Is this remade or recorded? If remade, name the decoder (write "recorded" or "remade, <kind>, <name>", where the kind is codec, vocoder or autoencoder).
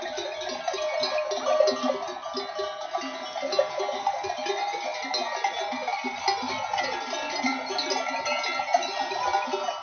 recorded